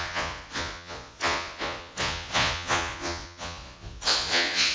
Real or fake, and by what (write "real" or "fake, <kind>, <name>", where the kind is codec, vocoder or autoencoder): fake, vocoder, Vocos